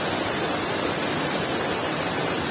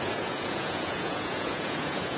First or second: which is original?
first